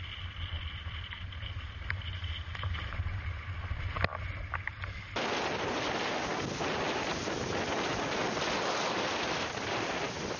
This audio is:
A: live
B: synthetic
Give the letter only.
A